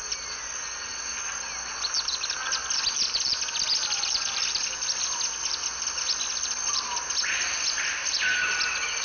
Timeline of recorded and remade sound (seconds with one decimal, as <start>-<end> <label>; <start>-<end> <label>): 0.0-9.0 recorded